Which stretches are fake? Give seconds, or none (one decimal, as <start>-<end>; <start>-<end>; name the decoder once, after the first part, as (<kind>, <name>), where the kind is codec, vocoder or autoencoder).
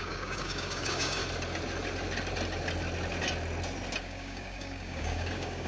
0.0-1.2 (codec, DAC); 4.0-5.7